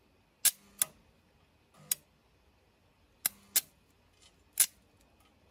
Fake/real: real